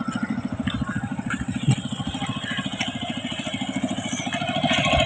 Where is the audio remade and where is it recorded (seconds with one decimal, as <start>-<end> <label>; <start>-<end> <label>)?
0.0-5.1 recorded